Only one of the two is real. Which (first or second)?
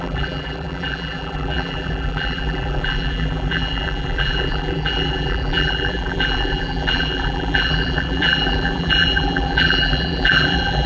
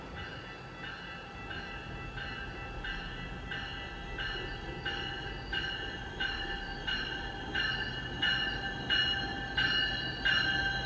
second